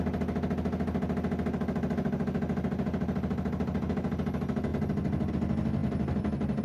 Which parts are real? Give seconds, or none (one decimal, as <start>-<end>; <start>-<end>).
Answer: 0.0-6.6